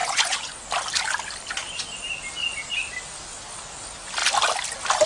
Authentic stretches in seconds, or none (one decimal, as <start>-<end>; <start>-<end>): 0.6-5.1

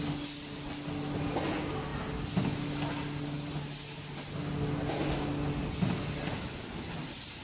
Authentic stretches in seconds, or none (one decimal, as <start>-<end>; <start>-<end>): 0.0-7.4

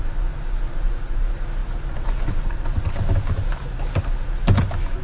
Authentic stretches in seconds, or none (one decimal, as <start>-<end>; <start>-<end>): 0.0-5.0

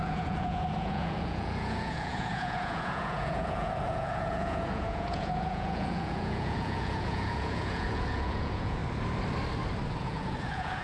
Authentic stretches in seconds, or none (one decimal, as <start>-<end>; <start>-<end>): 8.8-10.0

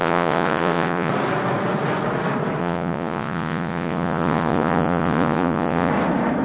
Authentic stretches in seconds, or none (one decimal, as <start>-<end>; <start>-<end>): 1.1-2.6; 5.9-6.4

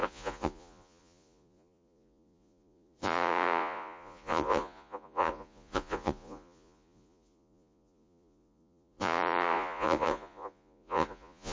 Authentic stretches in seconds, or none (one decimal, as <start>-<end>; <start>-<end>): none